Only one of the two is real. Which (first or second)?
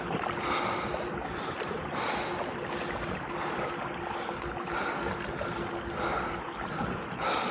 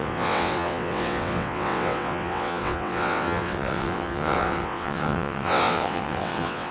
first